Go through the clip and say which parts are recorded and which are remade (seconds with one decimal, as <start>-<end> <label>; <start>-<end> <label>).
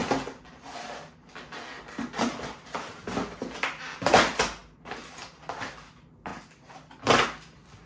0.0-7.9 recorded